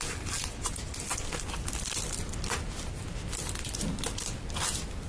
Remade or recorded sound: recorded